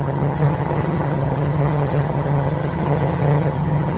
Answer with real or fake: fake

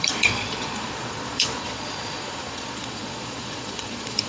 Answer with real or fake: fake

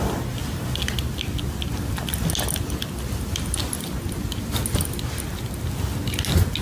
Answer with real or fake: real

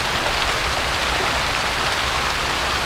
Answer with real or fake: real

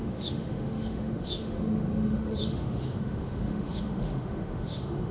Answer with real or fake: fake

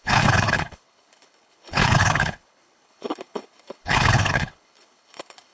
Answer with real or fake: fake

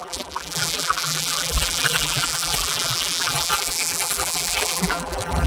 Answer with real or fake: fake